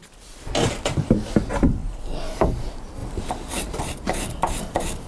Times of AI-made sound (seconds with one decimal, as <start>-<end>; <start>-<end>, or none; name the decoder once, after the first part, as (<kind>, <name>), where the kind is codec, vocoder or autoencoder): 1.2-1.8 (vocoder, BigVGAN v2); 2.5-5.1

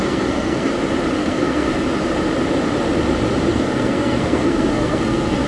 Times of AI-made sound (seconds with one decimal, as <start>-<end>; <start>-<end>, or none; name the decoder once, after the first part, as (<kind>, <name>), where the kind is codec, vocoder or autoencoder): 0.0-0.7 (codec, SNAC); 1.2-1.8; 3.5-5.5

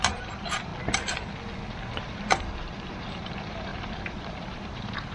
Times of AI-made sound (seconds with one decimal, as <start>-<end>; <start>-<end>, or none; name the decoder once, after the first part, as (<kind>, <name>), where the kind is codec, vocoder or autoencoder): 0.0-0.7 (vocoder, BigVGAN v2); 2.0-5.1

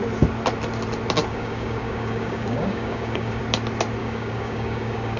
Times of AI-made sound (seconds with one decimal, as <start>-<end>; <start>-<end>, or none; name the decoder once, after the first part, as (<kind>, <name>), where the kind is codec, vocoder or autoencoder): 1.3-3.4 (codec, DAC); 4.0-5.2

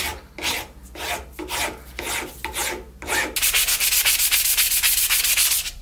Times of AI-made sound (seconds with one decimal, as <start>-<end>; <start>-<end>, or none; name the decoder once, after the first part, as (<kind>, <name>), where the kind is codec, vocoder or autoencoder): none

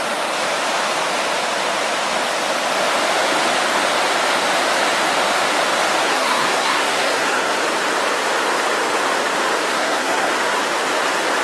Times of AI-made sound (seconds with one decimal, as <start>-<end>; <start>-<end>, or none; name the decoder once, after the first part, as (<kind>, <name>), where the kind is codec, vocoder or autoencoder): 6.0-7.6 (codec, SNAC); 9.7-10.3

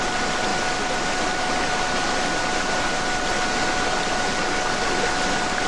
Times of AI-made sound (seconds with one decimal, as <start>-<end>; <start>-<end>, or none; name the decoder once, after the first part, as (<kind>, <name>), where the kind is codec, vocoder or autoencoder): none

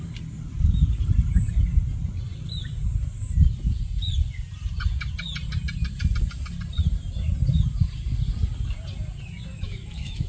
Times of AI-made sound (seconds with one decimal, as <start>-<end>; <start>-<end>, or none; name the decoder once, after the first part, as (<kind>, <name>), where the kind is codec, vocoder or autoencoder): 9.5-10.3 (autoencoder, DAC-VAE)